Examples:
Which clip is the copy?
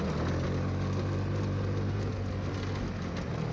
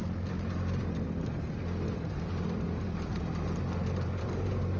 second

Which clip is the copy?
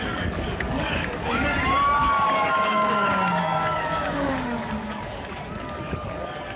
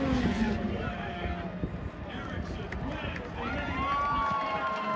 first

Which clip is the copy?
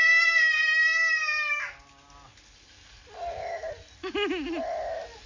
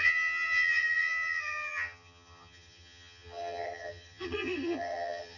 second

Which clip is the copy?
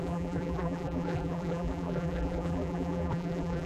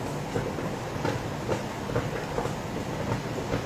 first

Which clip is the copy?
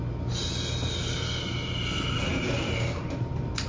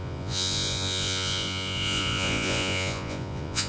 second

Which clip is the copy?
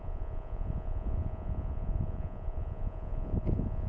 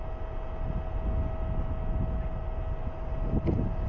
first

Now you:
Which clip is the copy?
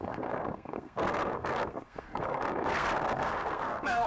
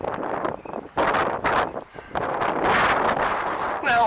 first